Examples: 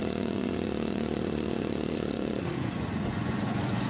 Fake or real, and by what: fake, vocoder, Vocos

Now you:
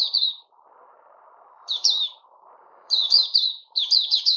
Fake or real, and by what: fake, vocoder, BigVGAN v2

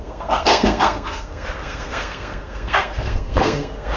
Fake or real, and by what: fake, codec, SNAC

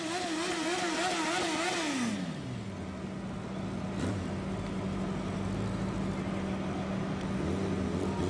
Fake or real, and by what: real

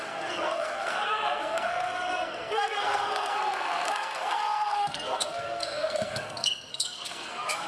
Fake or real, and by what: fake, codec, SNAC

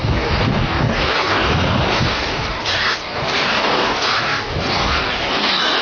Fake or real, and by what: fake, codec, DAC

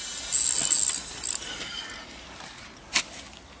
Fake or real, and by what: real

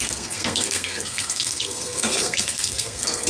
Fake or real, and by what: fake, codec, SNAC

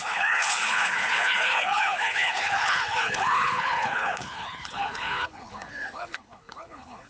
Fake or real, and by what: fake, codec, HILCodec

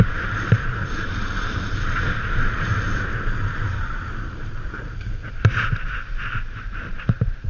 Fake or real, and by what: fake, vocoder, BigVGAN v2